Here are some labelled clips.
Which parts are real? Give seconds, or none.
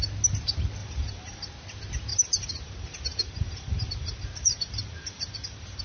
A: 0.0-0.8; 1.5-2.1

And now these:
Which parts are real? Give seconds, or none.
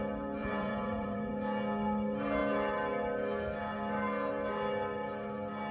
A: 0.0-0.4; 1.3-5.7